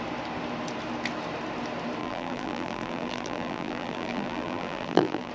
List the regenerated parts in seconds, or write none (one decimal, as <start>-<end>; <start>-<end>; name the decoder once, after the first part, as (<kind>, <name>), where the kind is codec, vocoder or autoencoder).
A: 2.0-5.3 (vocoder, BigVGAN v2)